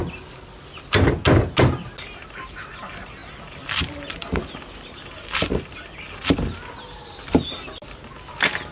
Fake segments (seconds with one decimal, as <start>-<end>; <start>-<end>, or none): none